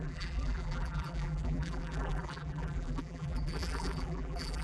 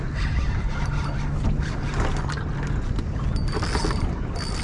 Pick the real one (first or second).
second